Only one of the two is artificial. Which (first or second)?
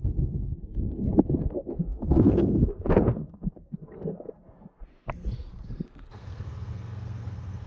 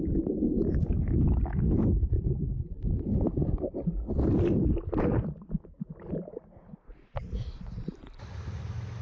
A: first